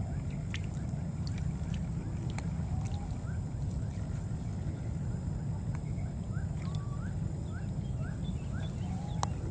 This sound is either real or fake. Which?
real